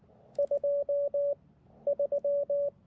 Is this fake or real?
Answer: real